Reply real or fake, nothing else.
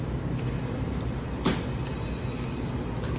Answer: real